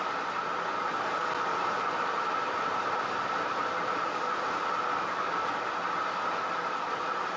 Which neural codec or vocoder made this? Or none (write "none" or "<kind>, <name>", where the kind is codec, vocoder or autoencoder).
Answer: none